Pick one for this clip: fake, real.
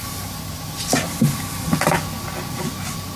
real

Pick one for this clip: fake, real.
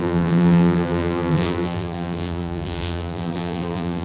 fake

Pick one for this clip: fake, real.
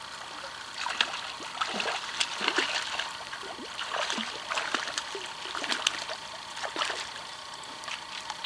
real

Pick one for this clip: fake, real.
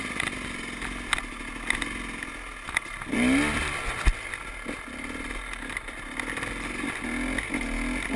real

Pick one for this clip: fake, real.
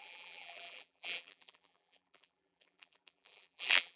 fake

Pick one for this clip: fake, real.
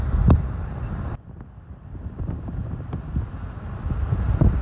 real